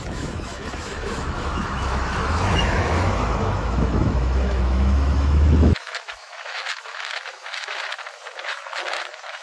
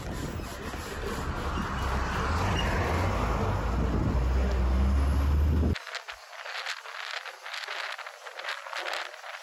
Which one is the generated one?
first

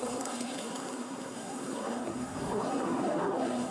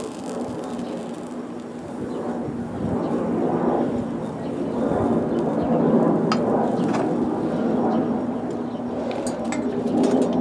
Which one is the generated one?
first